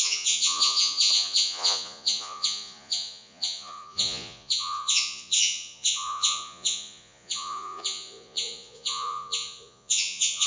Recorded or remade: remade